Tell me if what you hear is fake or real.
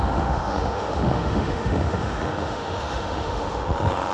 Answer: fake